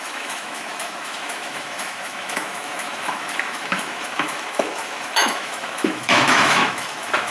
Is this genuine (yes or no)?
no